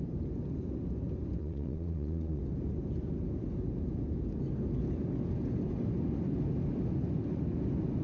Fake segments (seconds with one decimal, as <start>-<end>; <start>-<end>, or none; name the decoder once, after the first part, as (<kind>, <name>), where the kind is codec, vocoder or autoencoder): 1.4-2.4 (vocoder, Vocos)